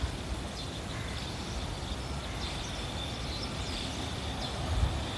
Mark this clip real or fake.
real